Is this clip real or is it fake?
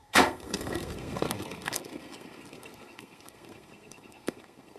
fake